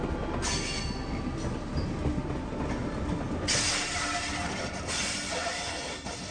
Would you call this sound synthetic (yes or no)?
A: no